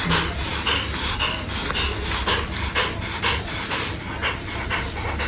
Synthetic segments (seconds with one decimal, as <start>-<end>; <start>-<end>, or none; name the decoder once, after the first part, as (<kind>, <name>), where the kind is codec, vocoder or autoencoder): 0.0-0.5 (vocoder, BigVGAN v2); 3.2-5.3